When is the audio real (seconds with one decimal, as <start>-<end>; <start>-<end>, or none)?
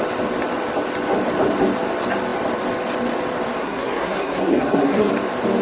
0.0-3.6; 5.1-5.6